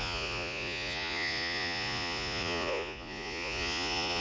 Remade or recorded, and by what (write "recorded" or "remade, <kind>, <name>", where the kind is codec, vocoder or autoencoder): remade, vocoder, Vocos